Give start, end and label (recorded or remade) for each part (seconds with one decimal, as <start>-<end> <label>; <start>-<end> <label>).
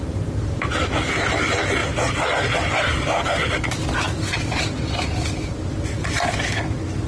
0.0-7.1 recorded